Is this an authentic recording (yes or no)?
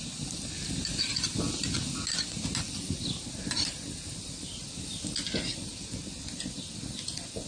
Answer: yes